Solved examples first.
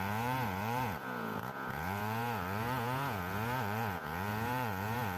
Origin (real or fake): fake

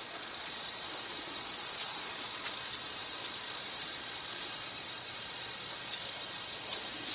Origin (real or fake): fake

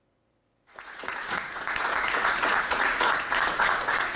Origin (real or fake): fake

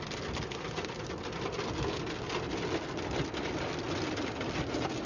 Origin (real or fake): real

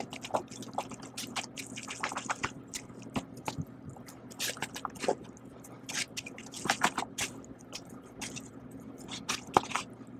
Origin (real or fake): real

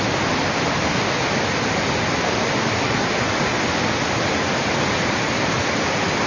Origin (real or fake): real